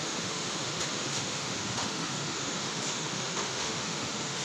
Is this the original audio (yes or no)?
no